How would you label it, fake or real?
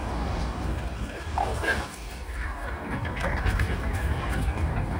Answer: fake